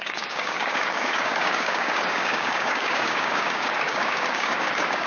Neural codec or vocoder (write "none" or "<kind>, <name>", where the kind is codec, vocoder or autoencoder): codec, DAC